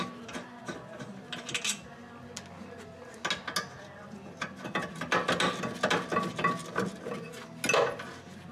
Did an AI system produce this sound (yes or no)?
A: no